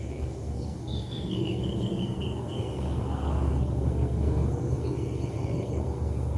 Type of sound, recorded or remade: remade